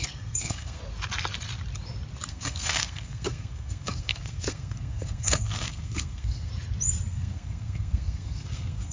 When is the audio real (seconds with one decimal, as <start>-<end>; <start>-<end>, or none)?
0.8-2.3; 6.5-7.1